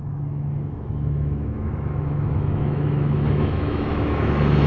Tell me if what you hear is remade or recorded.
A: remade